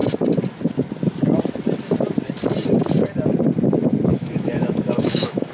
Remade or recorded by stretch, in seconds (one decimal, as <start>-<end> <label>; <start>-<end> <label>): 0.0-4.1 recorded; 4.1-5.5 remade